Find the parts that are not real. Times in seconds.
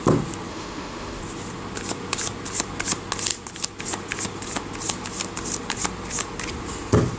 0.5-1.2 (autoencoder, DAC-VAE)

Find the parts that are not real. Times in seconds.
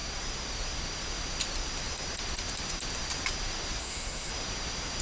3.8-4.3 (codec, SNAC)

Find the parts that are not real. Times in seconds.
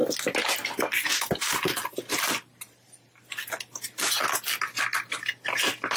none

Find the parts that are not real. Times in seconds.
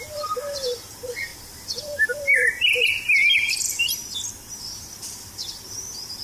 0.0-1.3 (vocoder, BigVGAN v2); 1.8-4.0; 5.2-6.2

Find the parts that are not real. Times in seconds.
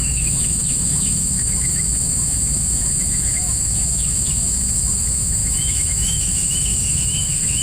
0.0-7.6 (autoencoder, DAC-VAE)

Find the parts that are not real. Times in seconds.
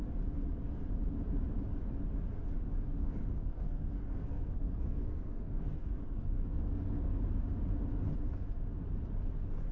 3.0-7.2 (codec, SNAC)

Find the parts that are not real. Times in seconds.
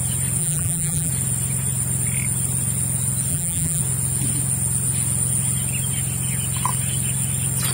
0.4-1.1 (vocoder, BigVGAN v2); 3.3-3.8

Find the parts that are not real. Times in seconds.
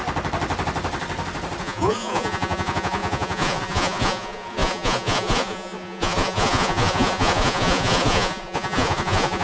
1.6-9.4 (vocoder, Vocos)